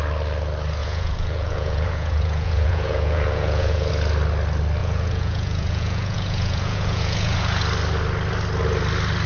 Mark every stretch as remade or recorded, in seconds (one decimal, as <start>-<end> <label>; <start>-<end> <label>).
0.0-0.8 recorded; 0.8-3.9 remade; 3.9-4.8 recorded; 4.8-7.6 remade; 7.6-9.3 recorded